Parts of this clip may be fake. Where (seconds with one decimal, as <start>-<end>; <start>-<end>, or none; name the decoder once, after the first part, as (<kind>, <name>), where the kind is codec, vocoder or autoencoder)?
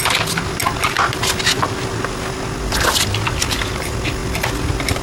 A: none